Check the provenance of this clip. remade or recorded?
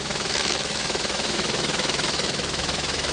remade